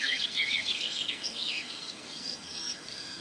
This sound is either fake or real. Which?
fake